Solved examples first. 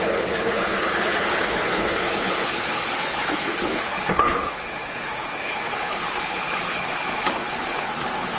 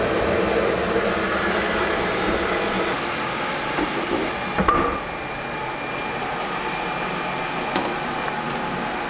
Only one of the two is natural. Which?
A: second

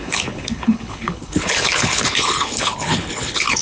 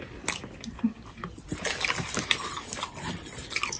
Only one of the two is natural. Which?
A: second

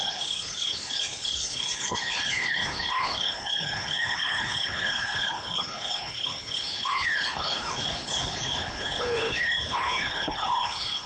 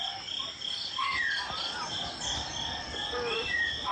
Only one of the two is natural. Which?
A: second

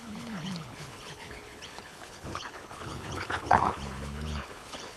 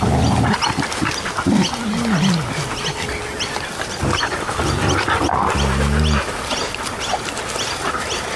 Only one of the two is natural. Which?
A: second